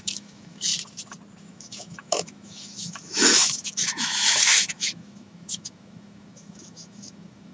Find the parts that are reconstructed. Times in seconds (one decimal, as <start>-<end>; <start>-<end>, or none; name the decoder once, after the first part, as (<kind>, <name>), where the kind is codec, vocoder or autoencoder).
0.0-0.7 (autoencoder, DAC-VAE); 1.4-7.5